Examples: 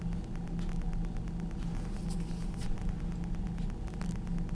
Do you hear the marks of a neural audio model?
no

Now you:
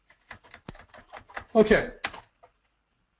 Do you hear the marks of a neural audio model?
no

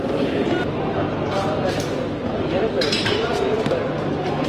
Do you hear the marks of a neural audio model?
no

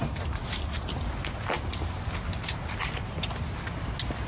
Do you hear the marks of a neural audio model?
no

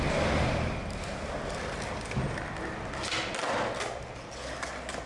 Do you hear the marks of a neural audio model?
no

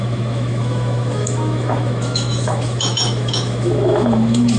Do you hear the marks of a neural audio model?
yes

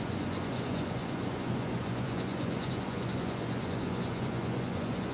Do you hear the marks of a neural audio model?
yes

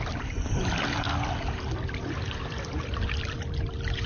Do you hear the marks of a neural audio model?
yes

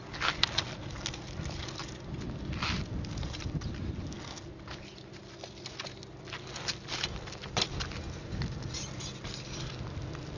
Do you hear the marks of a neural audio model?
no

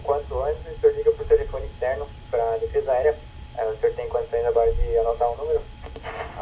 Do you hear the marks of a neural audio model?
no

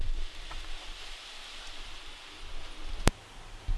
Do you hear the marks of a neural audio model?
no